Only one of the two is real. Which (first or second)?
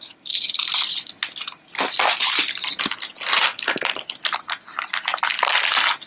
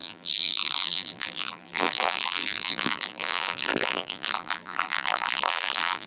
first